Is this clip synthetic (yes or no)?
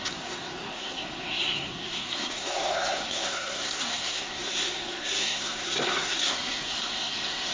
yes